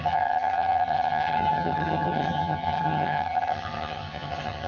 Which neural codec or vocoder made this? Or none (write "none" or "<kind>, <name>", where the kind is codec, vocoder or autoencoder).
vocoder, HiFi-GAN